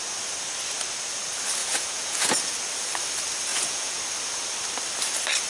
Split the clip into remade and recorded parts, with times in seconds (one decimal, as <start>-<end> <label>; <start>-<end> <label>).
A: 0.0-1.6 recorded; 1.6-2.5 remade; 2.5-3.5 recorded; 3.5-4.0 remade; 4.0-5.5 recorded